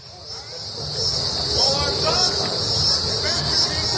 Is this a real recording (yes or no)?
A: yes